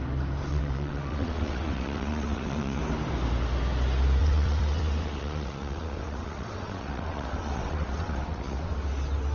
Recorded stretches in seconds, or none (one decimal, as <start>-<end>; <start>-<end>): 0.0-0.5; 2.8-4.2; 8.7-9.3